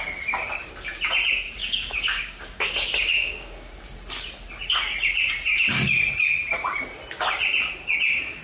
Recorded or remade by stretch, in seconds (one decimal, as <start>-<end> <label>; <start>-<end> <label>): 0.0-1.6 recorded; 1.6-3.7 remade; 3.7-8.4 recorded